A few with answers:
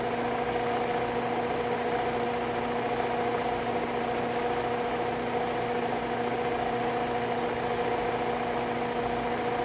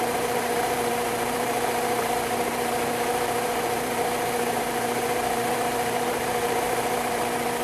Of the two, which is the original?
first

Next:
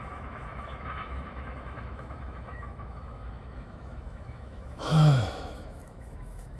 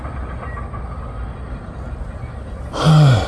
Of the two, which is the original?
second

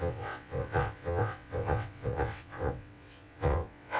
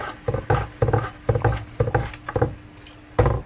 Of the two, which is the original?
second